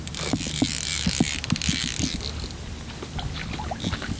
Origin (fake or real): real